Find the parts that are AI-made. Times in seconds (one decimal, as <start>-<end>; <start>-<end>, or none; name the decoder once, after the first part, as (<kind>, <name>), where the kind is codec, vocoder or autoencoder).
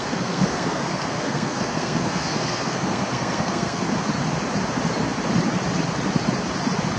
0.0-3.8 (codec, SNAC)